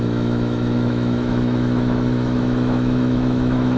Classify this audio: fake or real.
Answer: fake